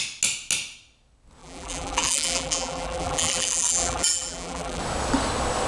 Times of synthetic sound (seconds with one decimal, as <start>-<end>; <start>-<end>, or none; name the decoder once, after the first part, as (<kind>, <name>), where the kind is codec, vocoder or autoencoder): 1.4-4.8 (vocoder, BigVGAN v2)